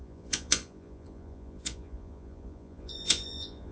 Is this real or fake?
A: fake